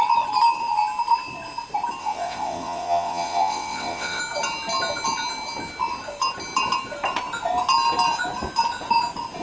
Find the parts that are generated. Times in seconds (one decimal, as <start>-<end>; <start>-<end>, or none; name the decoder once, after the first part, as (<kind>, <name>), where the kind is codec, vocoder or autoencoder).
2.0-4.2 (vocoder, WaveNeXt)